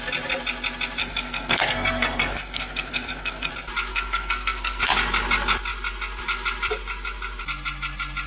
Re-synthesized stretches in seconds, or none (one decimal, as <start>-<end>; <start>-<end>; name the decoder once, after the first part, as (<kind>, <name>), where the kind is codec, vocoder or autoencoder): 1.0-3.5 (codec, SNAC); 3.9-4.8